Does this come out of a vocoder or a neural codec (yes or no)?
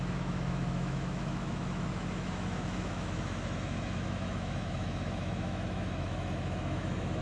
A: yes